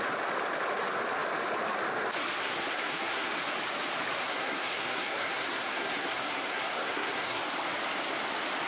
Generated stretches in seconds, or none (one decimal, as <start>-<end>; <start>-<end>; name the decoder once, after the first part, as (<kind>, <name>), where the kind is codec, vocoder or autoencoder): 2.4-3.3 (codec, SNAC); 4.2-7.4